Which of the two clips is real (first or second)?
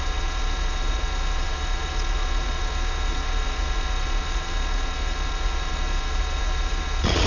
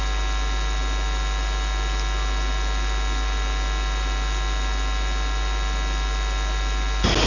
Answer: second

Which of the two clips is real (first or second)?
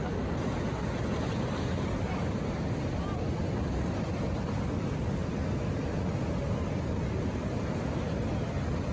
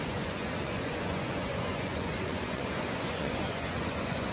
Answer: first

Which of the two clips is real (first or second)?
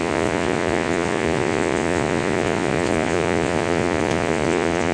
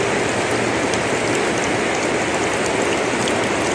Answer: second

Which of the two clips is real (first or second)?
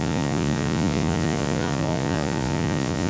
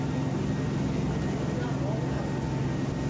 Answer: second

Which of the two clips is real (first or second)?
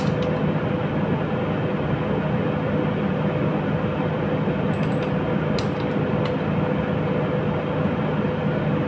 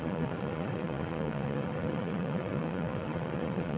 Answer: first